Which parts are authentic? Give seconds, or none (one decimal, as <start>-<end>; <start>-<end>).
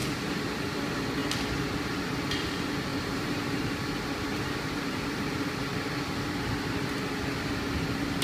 0.7-2.9; 3.8-4.3; 6.1-8.2